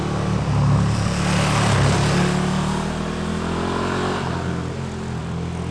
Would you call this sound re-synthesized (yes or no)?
no